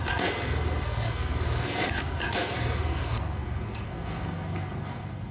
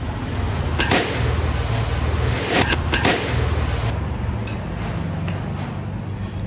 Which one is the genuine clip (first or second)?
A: second